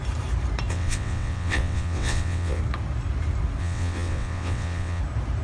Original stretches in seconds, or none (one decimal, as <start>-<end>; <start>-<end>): 0.0-0.7; 2.6-3.6; 5.0-5.4